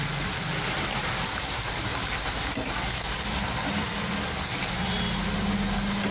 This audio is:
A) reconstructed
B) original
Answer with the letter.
B